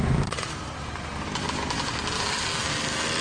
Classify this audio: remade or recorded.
recorded